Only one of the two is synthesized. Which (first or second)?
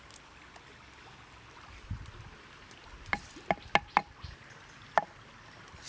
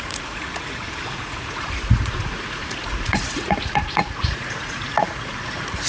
second